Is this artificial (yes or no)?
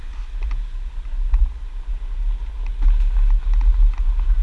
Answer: no